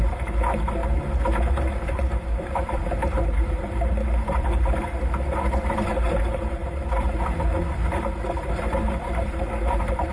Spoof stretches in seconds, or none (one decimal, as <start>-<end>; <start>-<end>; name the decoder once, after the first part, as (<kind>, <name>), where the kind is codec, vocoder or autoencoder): 0.0-0.8 (vocoder, BigVGAN v2); 1.5-10.1